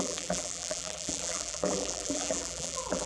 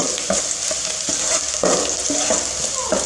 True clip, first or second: second